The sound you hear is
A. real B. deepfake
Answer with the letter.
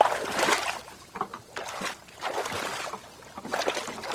A